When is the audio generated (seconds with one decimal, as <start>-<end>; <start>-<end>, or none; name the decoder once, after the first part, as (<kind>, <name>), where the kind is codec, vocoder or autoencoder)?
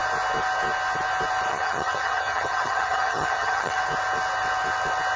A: 1.5-3.8 (vocoder, HiFi-GAN)